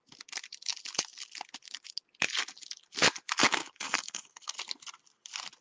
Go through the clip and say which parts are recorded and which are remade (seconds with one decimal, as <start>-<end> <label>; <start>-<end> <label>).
0.0-3.6 recorded; 3.6-4.6 remade; 4.6-5.6 recorded